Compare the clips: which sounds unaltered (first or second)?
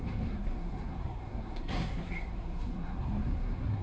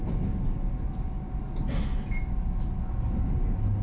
second